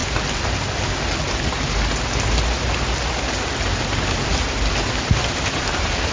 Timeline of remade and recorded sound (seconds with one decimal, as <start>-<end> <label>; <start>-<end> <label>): 0.0-3.7 recorded; 3.7-6.1 remade